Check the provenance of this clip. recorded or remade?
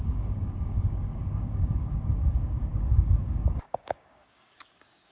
remade